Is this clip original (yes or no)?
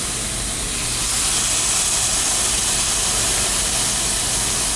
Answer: yes